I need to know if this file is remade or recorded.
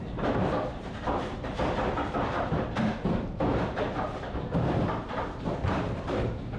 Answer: remade